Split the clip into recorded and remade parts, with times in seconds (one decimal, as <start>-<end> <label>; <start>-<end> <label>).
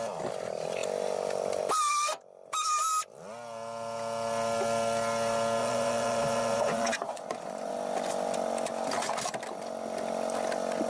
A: 0.0-5.6 recorded; 5.6-7.7 remade; 7.7-10.9 recorded